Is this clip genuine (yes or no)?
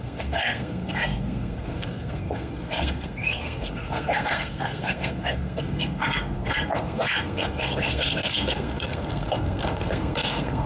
no